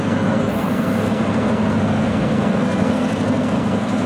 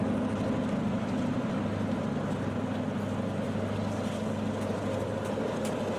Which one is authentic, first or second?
second